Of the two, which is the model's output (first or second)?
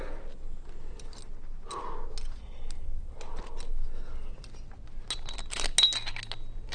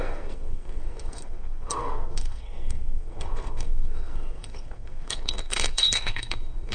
second